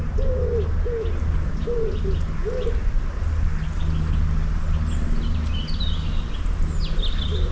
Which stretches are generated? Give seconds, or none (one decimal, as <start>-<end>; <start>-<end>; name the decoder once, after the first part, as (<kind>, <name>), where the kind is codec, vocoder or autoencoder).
none